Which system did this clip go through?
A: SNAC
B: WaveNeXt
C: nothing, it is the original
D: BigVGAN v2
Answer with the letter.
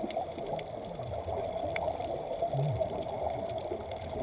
C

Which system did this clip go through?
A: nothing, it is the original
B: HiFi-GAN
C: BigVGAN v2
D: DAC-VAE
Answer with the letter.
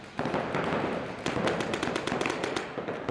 A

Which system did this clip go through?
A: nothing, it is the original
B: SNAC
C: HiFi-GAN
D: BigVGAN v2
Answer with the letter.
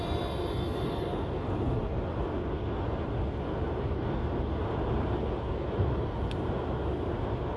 D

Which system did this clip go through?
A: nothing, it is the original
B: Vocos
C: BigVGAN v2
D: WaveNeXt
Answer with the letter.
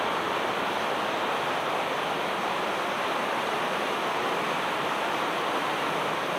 C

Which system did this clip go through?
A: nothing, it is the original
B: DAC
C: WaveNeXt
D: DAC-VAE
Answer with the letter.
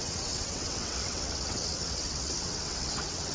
C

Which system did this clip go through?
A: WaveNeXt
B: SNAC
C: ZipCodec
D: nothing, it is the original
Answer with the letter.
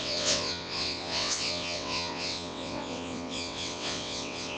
A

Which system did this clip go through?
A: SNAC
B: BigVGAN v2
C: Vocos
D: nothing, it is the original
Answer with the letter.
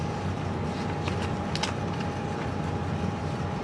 D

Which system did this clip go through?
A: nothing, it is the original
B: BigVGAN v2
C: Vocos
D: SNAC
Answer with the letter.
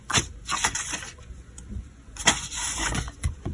C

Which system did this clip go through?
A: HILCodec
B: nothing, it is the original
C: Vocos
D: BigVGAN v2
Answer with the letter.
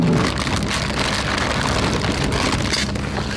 B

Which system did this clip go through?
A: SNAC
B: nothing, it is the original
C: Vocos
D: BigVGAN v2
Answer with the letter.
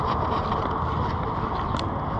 B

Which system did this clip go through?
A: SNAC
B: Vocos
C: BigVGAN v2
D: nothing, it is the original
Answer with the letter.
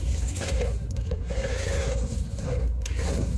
A